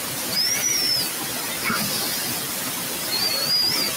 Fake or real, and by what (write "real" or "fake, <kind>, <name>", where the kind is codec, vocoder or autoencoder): fake, vocoder, BigVGAN v2